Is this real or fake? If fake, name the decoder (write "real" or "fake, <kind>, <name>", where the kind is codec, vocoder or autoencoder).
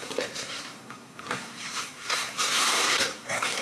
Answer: fake, codec, SNAC